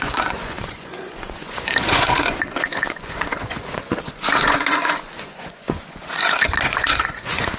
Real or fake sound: fake